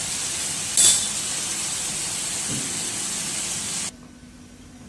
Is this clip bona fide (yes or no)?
yes